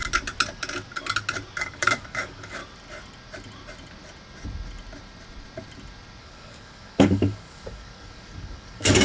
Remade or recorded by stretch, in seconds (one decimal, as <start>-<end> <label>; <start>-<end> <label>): 0.0-1.6 recorded; 1.6-2.6 remade; 2.6-6.2 recorded; 6.2-9.0 remade